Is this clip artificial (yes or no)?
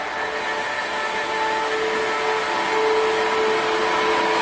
no